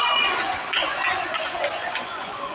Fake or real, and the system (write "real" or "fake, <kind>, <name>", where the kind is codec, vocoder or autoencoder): fake, vocoder, Vocos